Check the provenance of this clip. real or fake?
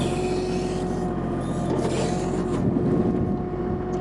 real